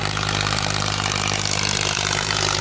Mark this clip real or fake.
fake